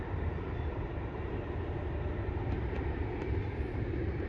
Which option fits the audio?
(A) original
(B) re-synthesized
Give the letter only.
B